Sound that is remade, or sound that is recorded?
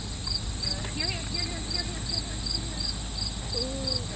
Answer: recorded